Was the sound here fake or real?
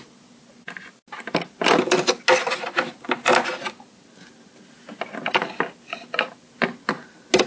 real